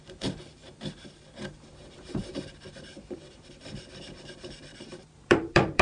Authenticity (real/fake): fake